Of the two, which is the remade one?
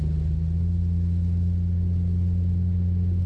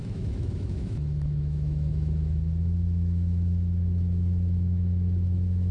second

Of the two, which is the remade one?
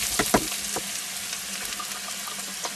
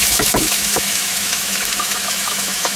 second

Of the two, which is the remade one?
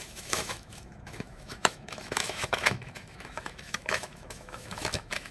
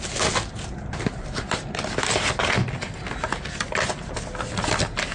first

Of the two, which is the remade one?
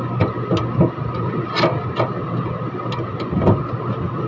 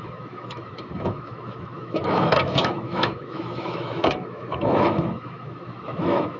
second